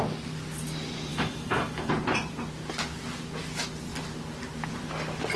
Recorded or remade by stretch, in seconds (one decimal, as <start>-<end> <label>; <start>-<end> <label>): 0.0-1.1 recorded; 1.1-1.9 remade; 1.9-5.4 recorded